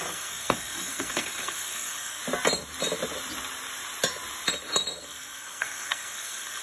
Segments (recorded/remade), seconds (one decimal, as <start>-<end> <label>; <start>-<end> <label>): 0.0-2.2 remade; 2.2-5.0 recorded; 5.0-6.6 remade